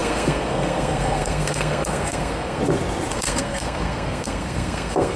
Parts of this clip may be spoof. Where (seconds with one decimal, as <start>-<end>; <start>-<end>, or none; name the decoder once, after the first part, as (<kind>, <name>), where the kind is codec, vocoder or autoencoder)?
0.0-2.6 (codec, SNAC); 3.1-5.2